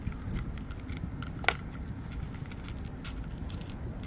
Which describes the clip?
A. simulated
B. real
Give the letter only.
B